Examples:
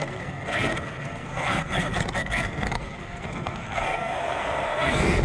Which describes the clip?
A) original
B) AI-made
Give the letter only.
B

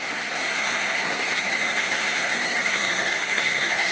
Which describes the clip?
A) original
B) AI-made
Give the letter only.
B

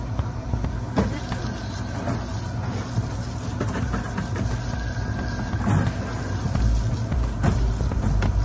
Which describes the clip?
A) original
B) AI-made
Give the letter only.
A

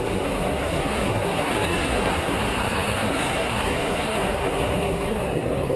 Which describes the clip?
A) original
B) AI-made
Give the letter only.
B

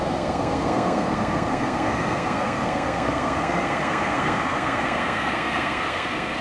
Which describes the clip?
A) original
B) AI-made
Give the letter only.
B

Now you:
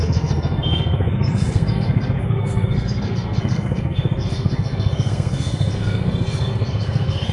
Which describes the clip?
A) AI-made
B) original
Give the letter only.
A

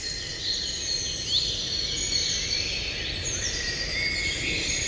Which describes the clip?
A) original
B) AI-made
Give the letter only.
A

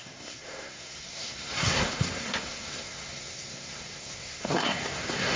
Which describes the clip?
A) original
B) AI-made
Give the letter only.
B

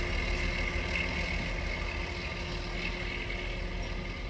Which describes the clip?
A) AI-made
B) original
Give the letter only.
B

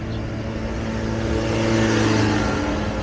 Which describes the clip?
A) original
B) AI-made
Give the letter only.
A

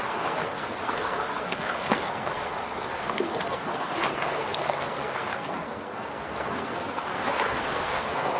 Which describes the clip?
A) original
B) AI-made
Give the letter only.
B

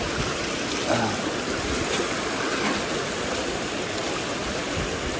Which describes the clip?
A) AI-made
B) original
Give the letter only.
B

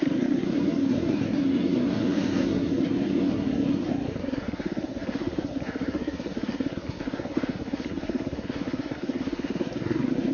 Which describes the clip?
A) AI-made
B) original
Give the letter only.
A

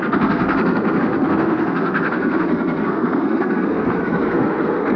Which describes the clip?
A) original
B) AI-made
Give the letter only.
B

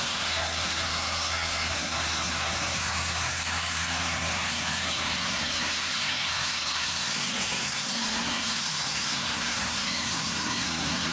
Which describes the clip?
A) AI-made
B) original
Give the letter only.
A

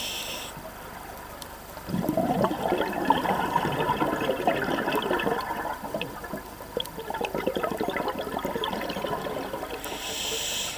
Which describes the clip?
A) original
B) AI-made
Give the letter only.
A